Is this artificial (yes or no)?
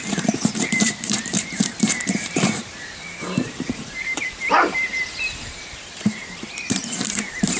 yes